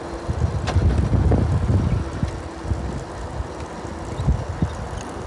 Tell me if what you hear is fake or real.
real